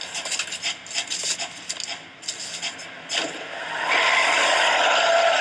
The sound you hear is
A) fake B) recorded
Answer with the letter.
B